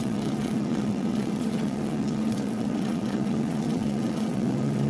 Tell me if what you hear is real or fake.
fake